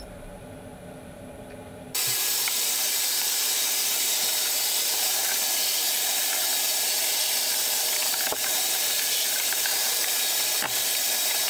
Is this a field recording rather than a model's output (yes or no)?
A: no